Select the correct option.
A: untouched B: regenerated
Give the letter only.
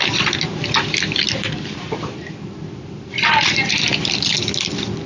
A